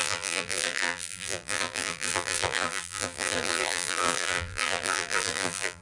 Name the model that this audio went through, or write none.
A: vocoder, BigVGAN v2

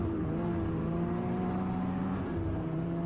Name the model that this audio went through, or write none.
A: vocoder, BigVGAN v2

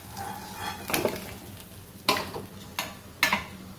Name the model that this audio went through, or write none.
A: none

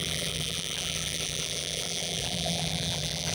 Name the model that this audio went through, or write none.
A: vocoder, BigVGAN v2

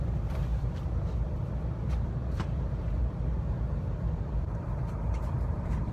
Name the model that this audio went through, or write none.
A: vocoder, BigVGAN v2